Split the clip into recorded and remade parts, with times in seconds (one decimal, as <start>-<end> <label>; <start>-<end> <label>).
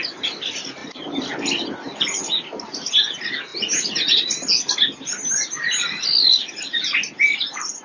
0.0-7.8 recorded